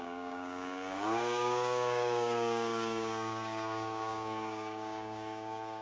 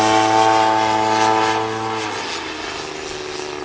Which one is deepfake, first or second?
first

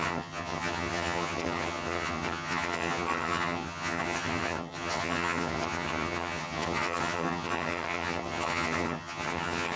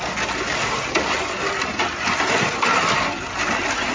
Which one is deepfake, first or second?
first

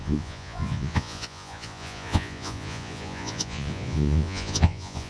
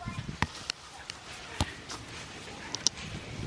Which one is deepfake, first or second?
first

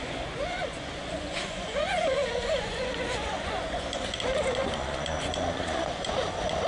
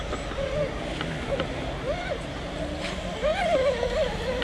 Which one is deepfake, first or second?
first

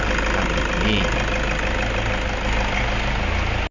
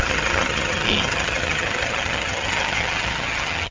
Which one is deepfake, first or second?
second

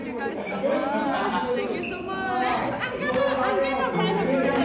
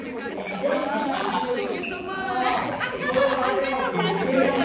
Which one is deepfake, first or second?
second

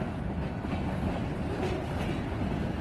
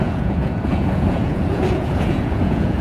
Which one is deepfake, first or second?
second